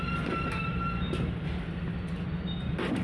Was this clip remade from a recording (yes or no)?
no